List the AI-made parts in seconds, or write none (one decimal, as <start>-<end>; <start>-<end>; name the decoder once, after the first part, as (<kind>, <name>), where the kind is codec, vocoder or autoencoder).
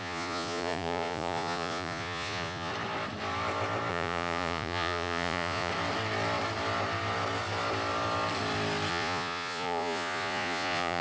0.0-2.7 (vocoder, Vocos); 3.9-5.7; 8.9-11.0